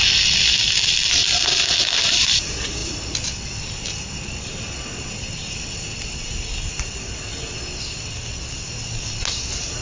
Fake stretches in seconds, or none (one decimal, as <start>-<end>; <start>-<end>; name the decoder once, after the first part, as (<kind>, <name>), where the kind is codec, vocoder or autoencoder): none